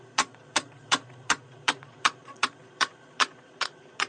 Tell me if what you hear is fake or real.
fake